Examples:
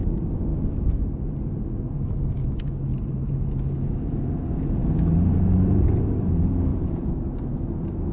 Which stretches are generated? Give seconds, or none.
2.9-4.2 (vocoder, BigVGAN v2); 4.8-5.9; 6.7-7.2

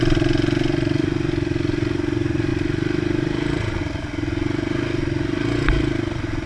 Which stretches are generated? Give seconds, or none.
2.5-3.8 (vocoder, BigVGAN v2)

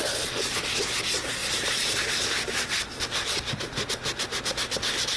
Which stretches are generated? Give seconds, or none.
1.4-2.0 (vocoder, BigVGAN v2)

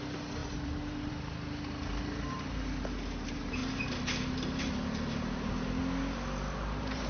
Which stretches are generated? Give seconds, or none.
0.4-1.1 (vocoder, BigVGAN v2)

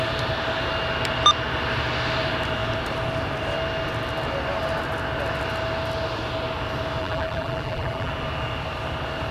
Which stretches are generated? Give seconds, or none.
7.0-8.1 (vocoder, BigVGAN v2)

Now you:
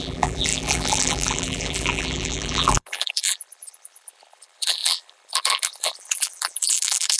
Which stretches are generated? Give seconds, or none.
0.0-7.2 (vocoder, BigVGAN v2)

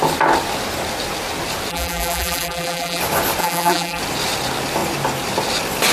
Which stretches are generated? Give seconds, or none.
1.7-3.0 (vocoder, BigVGAN v2); 3.4-4.0